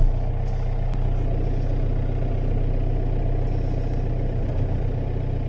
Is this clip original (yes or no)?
yes